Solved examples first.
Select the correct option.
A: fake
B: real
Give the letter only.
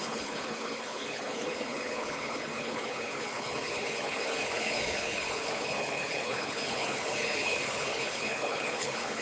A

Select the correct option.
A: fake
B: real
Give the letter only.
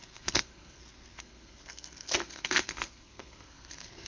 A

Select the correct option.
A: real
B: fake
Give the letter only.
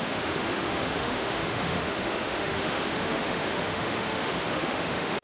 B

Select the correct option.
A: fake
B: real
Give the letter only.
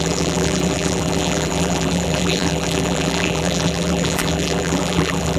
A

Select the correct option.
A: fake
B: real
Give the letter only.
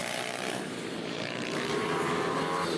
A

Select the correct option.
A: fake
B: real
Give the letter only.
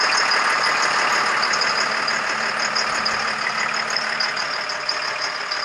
B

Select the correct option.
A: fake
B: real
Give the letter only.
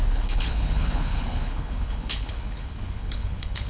A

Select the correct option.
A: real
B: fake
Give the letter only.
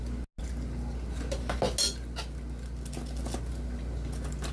A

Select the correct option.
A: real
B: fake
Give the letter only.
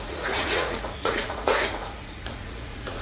B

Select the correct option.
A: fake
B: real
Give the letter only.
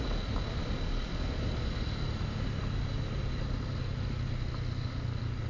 B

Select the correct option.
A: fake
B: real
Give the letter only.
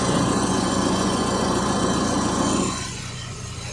A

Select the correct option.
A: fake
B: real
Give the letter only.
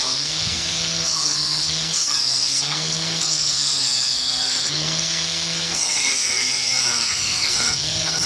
A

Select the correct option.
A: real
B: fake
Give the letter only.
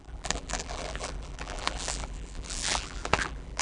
B